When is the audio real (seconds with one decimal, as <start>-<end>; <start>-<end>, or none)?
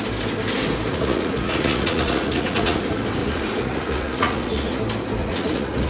0.0-0.9; 2.8-3.2; 4.8-5.2